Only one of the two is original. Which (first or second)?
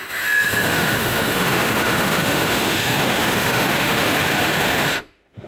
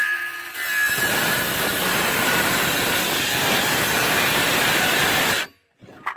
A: second